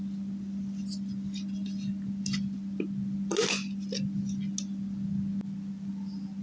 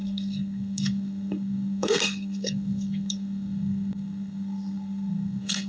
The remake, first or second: second